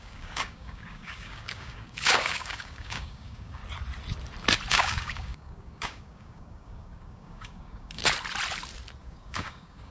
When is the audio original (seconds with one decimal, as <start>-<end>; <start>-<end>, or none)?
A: 3.6-4.7; 8.0-9.0